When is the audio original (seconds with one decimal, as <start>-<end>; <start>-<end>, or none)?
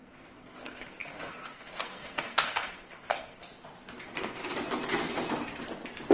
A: 3.5-4.0; 4.4-6.1